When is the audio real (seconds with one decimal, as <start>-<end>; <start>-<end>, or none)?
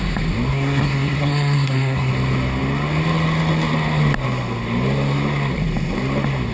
0.0-0.5; 2.1-6.5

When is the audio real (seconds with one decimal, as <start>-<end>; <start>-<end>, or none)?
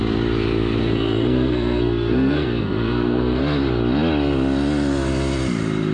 0.0-0.8; 3.4-5.9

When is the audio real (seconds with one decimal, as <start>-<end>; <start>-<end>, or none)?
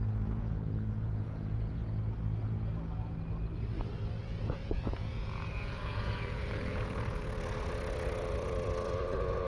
1.8-4.4; 7.2-9.5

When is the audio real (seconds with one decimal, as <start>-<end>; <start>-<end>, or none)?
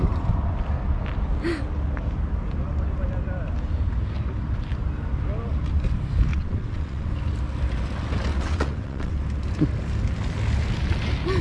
0.0-6.3; 7.1-8.3; 9.2-11.4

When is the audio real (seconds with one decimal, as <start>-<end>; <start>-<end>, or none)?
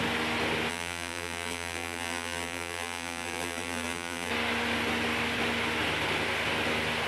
0.0-0.7; 4.3-7.1